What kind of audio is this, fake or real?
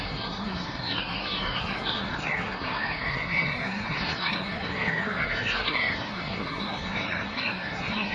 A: fake